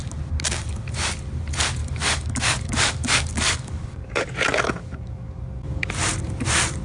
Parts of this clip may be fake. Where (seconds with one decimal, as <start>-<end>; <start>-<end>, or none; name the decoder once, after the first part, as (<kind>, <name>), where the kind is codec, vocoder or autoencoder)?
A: 1.8-5.9 (codec, DAC)